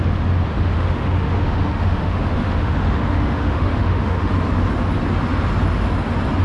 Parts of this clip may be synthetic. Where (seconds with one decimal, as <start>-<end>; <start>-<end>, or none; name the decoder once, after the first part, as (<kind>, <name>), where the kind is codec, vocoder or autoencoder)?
0.5-4.3 (autoencoder, DAC-VAE)